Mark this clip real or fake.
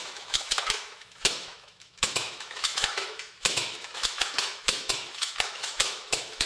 fake